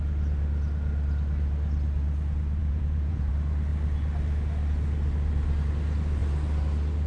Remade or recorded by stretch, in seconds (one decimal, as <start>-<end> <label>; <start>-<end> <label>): 0.0-2.6 recorded; 2.6-3.3 remade; 3.3-7.1 recorded